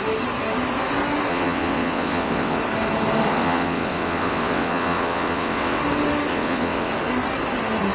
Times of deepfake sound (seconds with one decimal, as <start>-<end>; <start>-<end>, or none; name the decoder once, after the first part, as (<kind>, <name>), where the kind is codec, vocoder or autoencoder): 1.3-2.6 (vocoder, WaveNeXt); 3.3-5.8; 6.3-6.9